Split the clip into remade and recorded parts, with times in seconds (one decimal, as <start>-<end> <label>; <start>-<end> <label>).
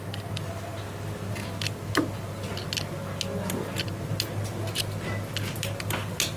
0.0-6.4 recorded